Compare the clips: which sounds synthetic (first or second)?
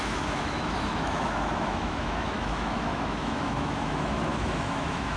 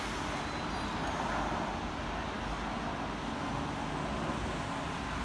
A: first